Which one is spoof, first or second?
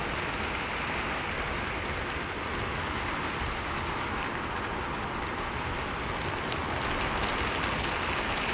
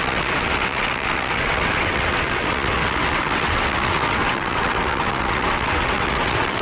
second